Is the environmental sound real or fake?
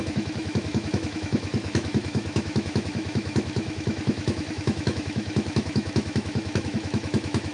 fake